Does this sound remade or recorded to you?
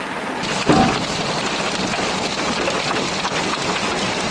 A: recorded